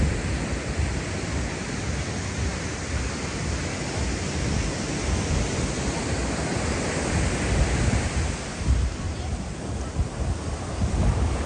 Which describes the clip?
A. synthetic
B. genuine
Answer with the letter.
B